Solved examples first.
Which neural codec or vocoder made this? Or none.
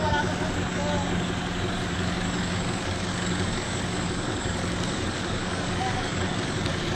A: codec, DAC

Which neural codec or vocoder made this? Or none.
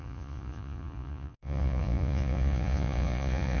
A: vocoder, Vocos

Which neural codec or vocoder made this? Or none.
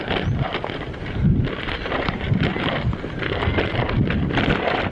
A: none